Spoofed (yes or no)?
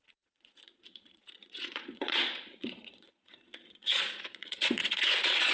yes